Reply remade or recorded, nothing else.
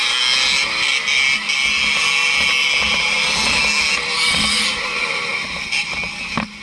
recorded